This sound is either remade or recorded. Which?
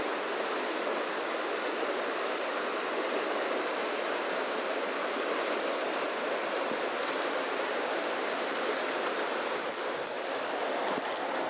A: recorded